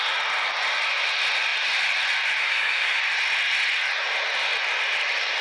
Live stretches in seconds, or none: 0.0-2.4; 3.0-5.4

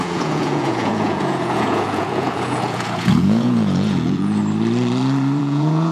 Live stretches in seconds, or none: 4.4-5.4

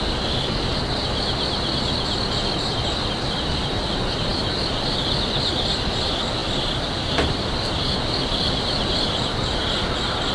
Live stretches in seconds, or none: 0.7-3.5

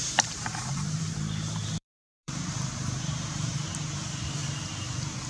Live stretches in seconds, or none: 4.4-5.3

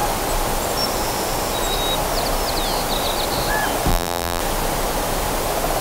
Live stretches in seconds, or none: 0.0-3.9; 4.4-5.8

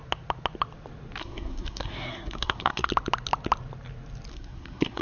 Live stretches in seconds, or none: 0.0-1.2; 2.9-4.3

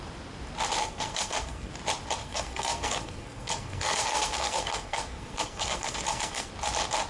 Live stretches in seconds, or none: 0.0-0.8; 1.7-2.2; 6.5-7.1